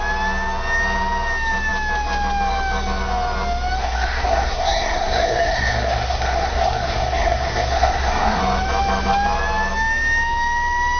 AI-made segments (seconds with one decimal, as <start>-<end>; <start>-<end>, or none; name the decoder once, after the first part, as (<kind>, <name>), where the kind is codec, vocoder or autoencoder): 3.8-8.4 (codec, SNAC)